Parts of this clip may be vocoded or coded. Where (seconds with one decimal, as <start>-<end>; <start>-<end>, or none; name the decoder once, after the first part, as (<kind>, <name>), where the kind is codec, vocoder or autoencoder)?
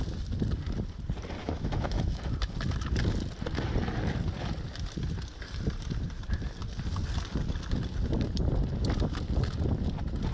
1.4-2.2 (autoencoder, DAC-VAE)